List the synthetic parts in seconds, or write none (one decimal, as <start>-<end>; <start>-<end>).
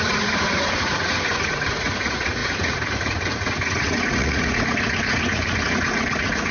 0.0-6.5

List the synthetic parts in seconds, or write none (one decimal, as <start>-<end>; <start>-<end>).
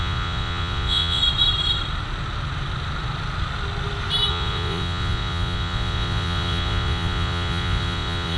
0.0-1.2; 4.3-8.4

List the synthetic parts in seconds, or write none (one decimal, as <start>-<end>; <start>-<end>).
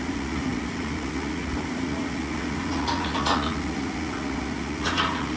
0.0-5.4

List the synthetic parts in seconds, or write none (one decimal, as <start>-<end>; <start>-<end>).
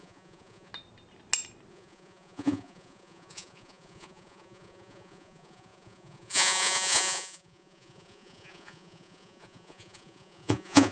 0.0-0.7; 1.7-10.9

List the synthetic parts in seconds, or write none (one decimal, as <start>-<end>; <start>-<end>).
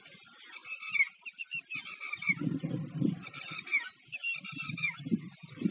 none